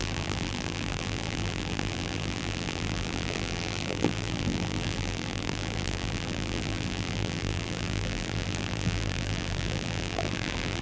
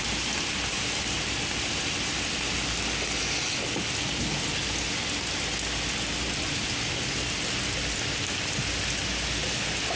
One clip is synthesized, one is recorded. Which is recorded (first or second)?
second